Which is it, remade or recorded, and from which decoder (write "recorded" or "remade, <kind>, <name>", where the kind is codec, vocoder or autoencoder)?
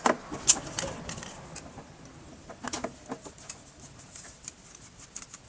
recorded